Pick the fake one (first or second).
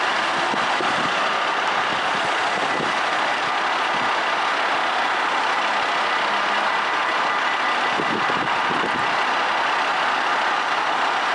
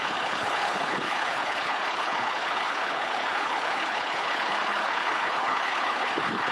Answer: second